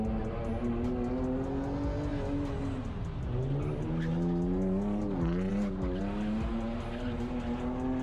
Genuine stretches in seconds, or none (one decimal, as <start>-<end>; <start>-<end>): 0.0-8.0